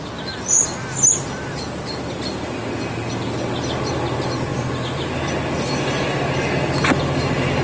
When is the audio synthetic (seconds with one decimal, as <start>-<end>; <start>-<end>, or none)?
none